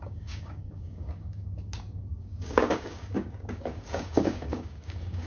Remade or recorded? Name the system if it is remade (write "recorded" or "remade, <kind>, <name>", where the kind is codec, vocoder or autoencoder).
remade, codec, DAC